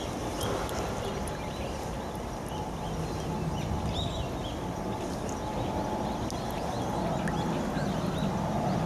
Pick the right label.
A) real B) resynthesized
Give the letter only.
A